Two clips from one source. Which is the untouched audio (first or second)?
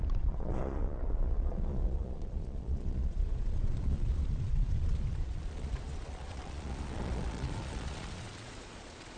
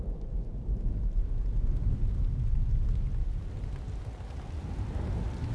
second